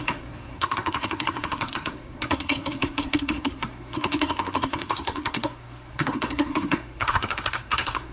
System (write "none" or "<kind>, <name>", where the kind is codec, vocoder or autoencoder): codec, SNAC